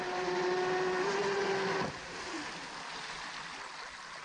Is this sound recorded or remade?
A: recorded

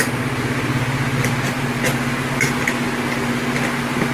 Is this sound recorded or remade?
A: recorded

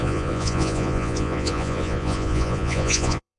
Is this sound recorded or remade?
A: remade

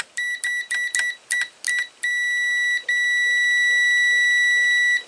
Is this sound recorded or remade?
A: recorded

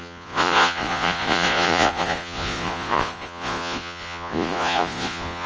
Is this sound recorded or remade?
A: remade